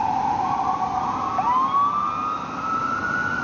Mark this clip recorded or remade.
recorded